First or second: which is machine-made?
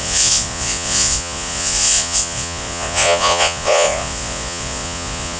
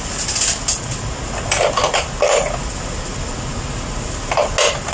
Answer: first